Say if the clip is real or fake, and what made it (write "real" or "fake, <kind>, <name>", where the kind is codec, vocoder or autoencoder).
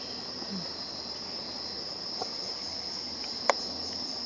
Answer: fake, vocoder, BigVGAN v2